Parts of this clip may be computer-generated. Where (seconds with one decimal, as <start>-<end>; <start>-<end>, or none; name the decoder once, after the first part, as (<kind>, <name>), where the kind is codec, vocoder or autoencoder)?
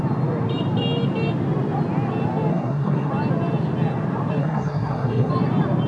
2.5-3.1 (codec, SNAC); 4.4-5.3